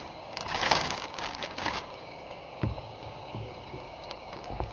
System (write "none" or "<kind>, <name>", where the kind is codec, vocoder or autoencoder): codec, DAC